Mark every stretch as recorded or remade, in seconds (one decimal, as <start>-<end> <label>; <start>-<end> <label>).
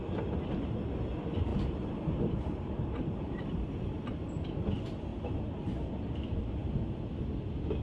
0.0-1.5 recorded; 1.5-3.4 remade; 3.4-5.1 recorded; 5.1-5.9 remade; 5.9-7.8 recorded